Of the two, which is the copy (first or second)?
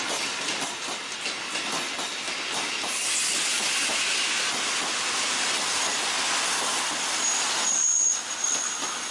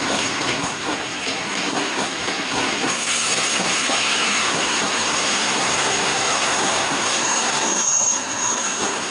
second